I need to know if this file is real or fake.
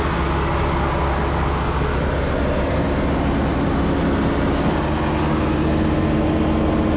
real